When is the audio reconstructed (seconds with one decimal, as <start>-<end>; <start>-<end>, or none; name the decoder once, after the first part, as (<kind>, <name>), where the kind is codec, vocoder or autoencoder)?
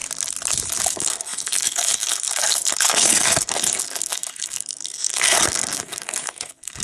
0.9-6.8 (codec, SNAC)